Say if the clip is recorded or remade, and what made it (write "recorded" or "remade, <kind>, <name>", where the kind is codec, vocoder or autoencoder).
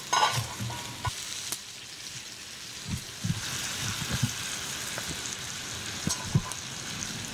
recorded